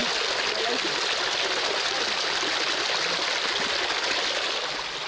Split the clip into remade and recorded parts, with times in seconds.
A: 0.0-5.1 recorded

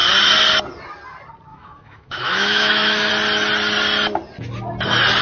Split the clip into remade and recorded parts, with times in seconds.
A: 0.0-1.5 recorded; 1.5-3.1 remade; 3.1-5.2 recorded